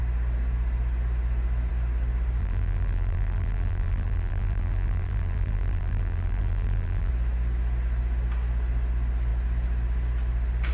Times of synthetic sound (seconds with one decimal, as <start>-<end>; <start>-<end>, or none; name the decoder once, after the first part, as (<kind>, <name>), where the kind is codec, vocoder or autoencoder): 2.4-7.1 (vocoder, BigVGAN v2)